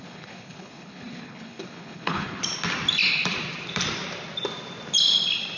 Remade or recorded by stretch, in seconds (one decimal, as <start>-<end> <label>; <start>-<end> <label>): 0.0-2.4 remade; 2.4-5.6 recorded